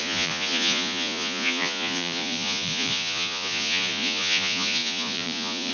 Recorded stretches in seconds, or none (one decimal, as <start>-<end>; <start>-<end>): none